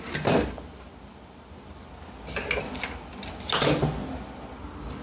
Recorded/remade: recorded